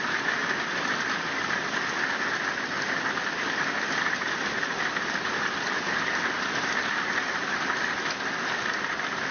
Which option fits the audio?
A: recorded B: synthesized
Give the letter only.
A